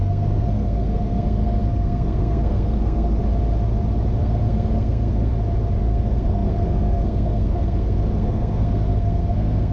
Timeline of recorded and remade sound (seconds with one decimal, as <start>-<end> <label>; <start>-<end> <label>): 0.0-3.2 remade; 3.2-4.2 recorded; 4.2-5.3 remade; 5.3-5.8 recorded; 5.8-9.7 remade